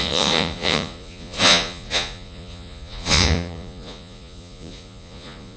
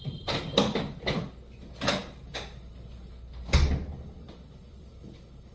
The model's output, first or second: first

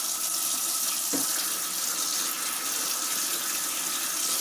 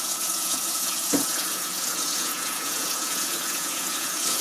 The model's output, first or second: second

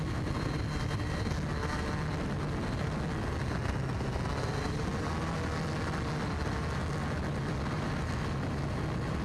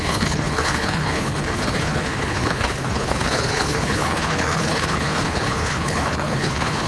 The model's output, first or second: second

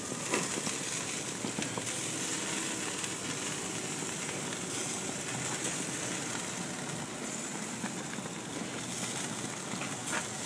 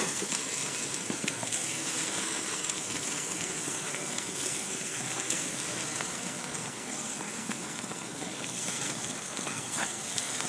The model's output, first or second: second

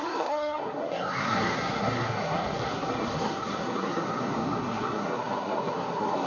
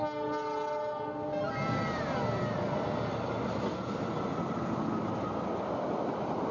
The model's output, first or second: first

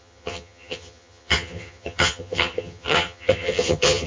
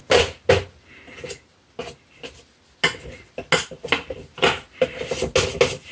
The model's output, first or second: first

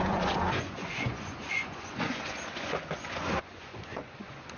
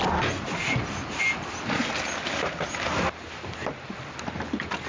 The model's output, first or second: first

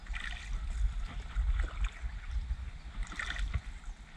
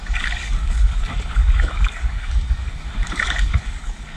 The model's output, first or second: second